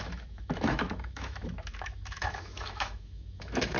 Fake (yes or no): yes